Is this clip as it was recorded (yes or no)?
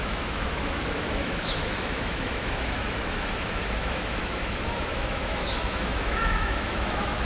no